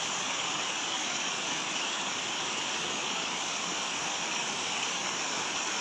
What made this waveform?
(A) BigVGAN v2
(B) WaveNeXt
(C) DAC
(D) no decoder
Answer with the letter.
C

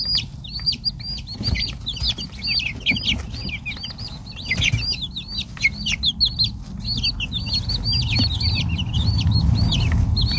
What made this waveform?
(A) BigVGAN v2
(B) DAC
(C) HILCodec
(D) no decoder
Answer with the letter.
D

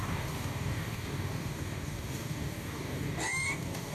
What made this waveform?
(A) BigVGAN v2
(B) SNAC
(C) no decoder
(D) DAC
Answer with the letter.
D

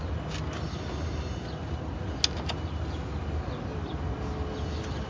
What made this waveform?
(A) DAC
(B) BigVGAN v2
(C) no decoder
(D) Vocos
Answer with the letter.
C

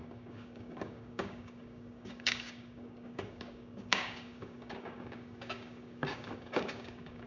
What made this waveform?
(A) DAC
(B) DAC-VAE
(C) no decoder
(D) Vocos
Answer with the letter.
A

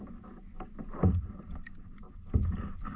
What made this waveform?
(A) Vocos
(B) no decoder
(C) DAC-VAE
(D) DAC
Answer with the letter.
B